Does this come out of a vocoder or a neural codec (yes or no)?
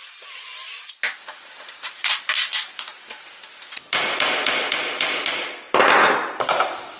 no